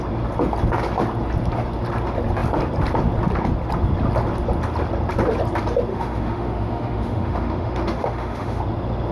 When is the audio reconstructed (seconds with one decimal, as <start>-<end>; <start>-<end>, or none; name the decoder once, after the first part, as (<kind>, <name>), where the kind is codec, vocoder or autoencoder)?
5.9-8.6 (autoencoder, DAC-VAE)